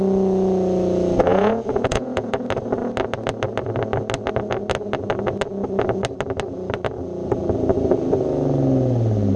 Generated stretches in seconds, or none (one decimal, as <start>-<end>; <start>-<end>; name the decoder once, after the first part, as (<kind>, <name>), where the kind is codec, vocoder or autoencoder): 1.3-2.3 (vocoder, Vocos)